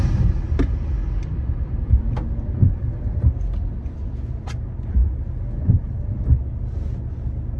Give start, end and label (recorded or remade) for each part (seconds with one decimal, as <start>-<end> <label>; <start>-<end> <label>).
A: 0.0-7.6 recorded